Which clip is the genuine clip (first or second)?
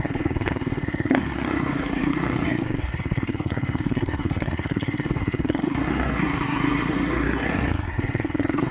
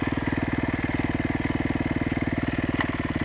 second